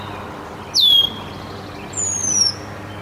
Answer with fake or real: real